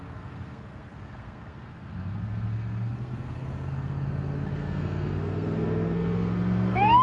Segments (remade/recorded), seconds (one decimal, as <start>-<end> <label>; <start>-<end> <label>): 0.0-7.0 remade